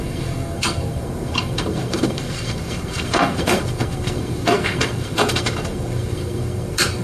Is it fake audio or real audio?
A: fake